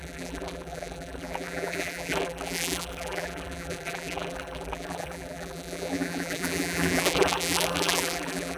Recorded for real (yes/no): no